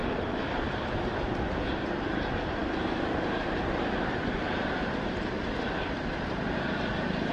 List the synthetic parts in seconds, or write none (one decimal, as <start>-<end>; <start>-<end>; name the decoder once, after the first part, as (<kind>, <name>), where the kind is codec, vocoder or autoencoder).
none